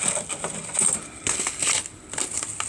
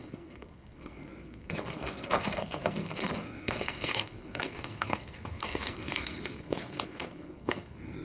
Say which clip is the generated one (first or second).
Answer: second